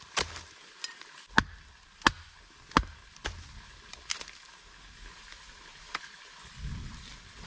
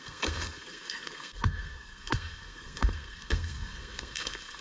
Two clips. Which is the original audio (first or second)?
first